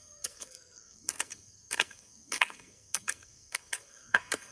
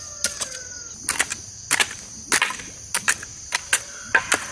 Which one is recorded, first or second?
second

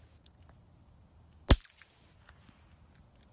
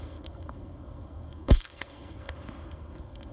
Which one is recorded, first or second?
first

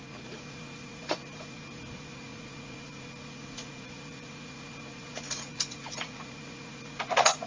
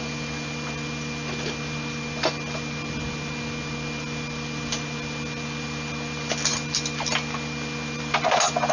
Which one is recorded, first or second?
second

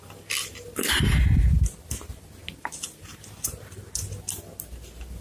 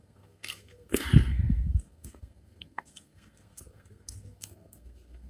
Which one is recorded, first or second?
first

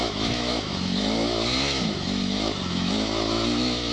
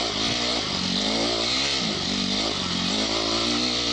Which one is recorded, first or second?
second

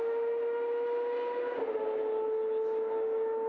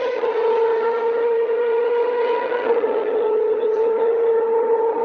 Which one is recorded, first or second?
first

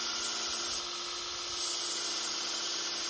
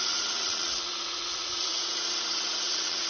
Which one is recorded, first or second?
first